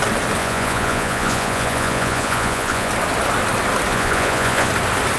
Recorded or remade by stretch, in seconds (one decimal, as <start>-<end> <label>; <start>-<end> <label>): 0.0-0.4 recorded; 0.4-2.9 remade; 2.9-3.9 recorded; 3.9-4.7 remade; 4.7-5.2 recorded